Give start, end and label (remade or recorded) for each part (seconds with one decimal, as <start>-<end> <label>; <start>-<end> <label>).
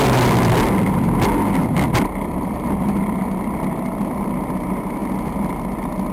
0.0-6.1 recorded